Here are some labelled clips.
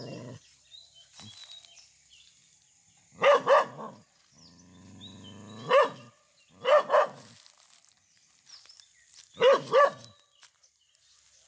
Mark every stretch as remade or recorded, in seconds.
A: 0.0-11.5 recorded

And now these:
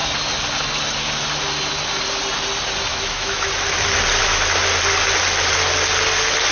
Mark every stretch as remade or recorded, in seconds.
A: 0.0-2.9 recorded; 2.9-3.5 remade; 3.5-6.5 recorded

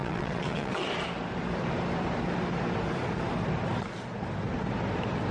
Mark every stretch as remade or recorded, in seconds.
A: 0.0-0.9 remade; 0.9-5.3 recorded

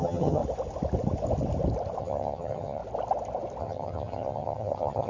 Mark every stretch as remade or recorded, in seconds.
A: 0.0-0.4 remade; 0.4-2.0 recorded; 2.0-2.8 remade; 2.8-3.6 recorded; 3.6-5.1 remade

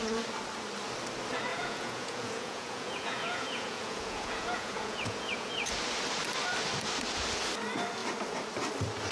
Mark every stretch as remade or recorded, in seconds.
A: 0.0-1.5 recorded; 1.5-5.7 remade; 5.7-9.1 recorded